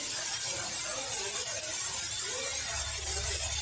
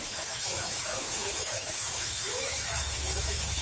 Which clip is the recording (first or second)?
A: first